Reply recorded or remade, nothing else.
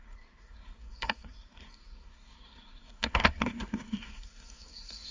remade